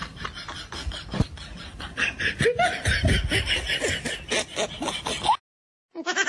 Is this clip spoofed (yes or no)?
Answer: no